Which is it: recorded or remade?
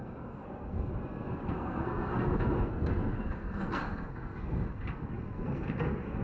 remade